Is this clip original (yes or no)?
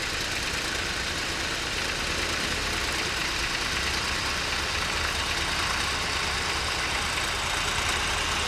yes